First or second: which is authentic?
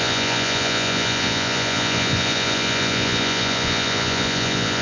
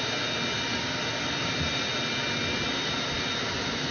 second